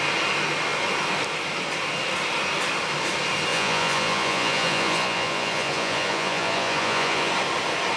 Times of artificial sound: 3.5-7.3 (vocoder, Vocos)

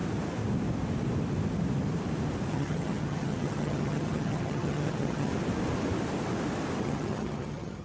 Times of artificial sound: 2.5-5.3 (vocoder, HiFi-GAN); 6.8-7.8

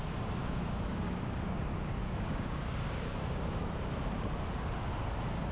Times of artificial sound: 0.4-1.6 (codec, DAC); 2.0-3.0

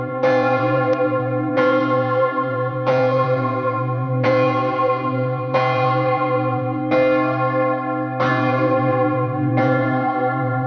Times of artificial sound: 0.0-6.8 (vocoder, Vocos); 8.3-10.7

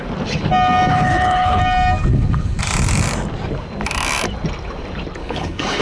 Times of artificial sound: 0.9-1.6 (codec, HILCodec); 2.1-2.6; 5.2-5.8